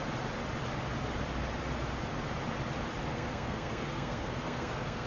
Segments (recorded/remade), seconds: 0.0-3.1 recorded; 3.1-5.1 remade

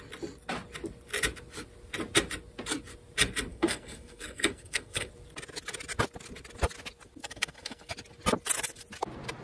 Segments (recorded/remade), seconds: 0.0-3.5 recorded; 3.5-5.1 remade; 5.1-7.2 recorded; 7.2-7.9 remade; 7.9-9.4 recorded

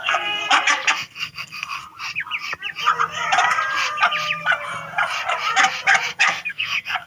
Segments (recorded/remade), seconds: 0.0-0.4 remade; 0.4-0.9 recorded; 0.9-1.8 remade; 1.8-6.1 recorded; 6.1-7.1 remade

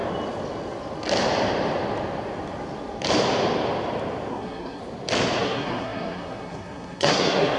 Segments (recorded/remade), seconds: 0.0-4.3 recorded; 4.3-4.8 remade; 4.8-5.4 recorded; 5.4-7.6 remade